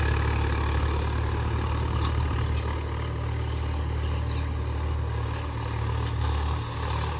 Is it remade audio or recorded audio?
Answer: recorded